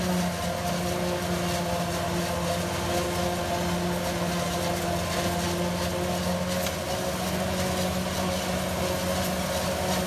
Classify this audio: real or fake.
real